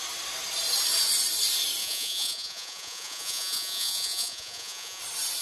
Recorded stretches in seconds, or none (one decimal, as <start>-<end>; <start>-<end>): 0.0-1.8; 5.0-5.4